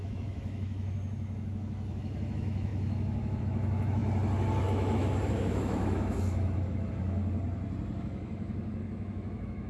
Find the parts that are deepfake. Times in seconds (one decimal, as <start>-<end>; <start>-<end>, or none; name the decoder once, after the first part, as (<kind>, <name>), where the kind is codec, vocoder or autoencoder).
0.0-4.0 (autoencoder, DAC-VAE); 4.6-7.2; 8.0-9.7